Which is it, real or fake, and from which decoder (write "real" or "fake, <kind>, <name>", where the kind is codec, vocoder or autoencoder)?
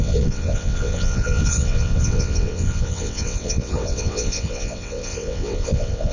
fake, vocoder, WaveNeXt